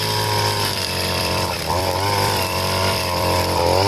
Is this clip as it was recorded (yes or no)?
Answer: no